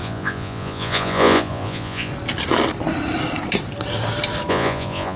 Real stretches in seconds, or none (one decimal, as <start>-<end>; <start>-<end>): 2.1-4.5